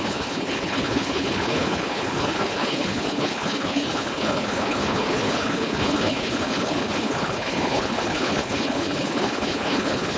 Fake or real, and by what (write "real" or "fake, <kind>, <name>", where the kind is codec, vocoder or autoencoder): fake, codec, HILCodec